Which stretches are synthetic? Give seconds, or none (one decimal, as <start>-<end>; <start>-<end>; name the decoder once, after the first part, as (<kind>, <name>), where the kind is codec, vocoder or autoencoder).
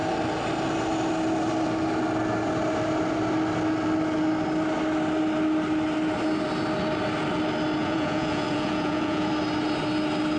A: 7.8-9.3 (vocoder, Vocos)